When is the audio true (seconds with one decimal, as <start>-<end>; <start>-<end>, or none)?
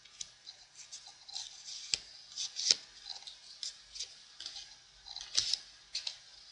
0.0-6.5